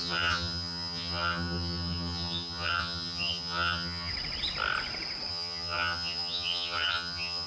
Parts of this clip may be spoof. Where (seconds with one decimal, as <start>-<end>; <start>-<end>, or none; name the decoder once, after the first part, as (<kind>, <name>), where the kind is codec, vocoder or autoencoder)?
0.0-4.1 (vocoder, HiFi-GAN); 5.3-7.5